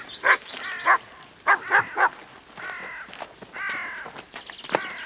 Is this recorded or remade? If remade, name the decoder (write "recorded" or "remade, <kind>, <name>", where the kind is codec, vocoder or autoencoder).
recorded